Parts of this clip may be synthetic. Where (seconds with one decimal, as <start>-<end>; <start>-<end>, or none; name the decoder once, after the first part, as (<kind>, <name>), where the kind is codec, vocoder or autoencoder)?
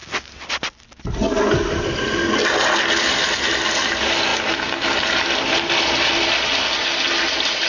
none